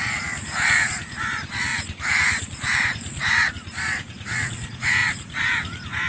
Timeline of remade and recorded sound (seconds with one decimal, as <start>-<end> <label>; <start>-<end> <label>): 0.0-6.1 remade